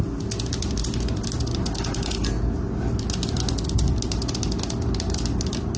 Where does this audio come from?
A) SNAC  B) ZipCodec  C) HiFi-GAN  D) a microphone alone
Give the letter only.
D